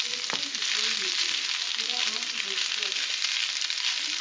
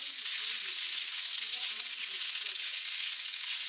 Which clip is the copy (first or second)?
second